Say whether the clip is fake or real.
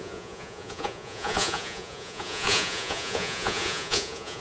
fake